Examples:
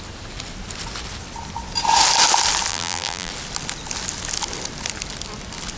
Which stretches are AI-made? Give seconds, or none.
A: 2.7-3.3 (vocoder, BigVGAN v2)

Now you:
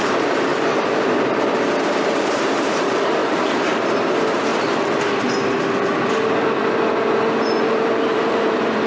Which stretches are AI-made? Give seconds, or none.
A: 0.0-0.5 (vocoder, BigVGAN v2); 1.6-4.5; 7.7-8.9

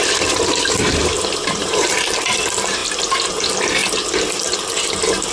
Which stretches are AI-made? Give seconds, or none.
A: 1.0-1.9 (vocoder, BigVGAN v2)

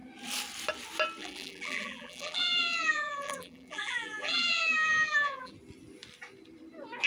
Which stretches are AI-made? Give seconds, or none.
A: 1.2-5.5 (vocoder, BigVGAN v2)

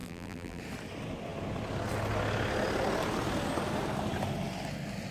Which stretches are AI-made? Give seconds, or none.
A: 0.0-0.6 (vocoder, BigVGAN v2)